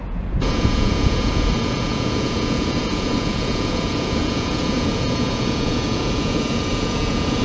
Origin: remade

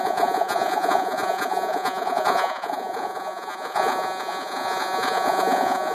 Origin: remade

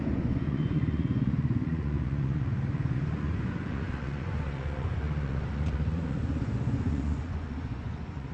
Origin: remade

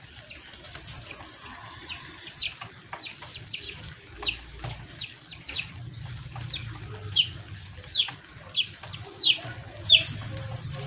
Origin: recorded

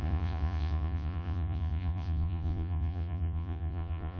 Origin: remade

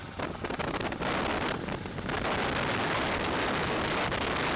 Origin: recorded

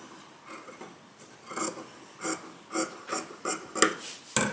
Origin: recorded